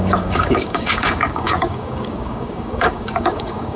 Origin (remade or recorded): remade